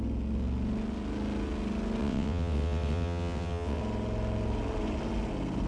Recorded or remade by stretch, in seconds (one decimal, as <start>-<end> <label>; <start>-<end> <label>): 0.0-2.0 recorded; 2.0-3.8 remade; 3.8-5.7 recorded